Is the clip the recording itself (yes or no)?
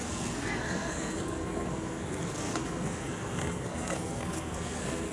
no